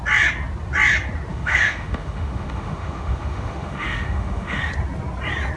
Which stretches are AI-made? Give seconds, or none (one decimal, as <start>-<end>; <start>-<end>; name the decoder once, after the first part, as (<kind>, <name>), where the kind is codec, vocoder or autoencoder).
1.3-4.7 (autoencoder, DAC-VAE)